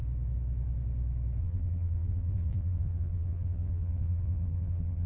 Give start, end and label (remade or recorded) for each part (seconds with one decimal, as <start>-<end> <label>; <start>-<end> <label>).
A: 0.0-1.4 recorded; 1.4-5.1 remade